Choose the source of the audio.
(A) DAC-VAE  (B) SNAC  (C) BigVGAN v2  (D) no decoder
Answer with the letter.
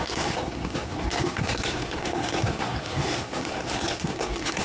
B